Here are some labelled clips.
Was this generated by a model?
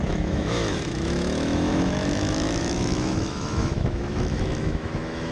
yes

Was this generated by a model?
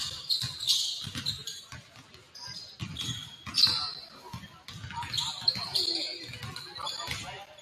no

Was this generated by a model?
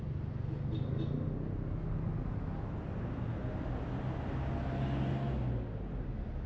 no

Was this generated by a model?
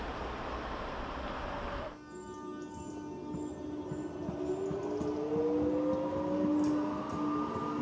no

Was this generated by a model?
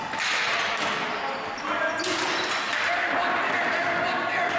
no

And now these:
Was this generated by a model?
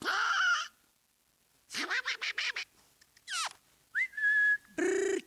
no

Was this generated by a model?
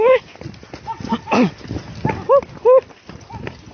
no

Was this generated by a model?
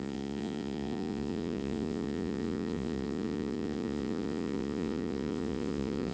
yes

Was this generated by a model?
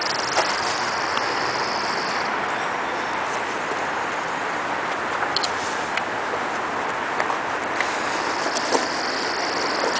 no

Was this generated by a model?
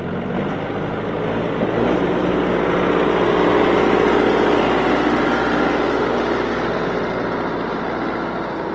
no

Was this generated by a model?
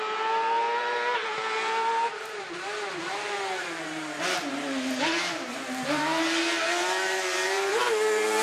yes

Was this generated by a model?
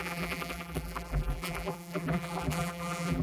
yes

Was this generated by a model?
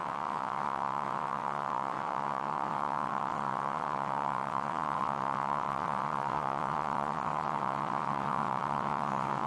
yes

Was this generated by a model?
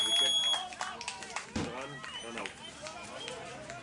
no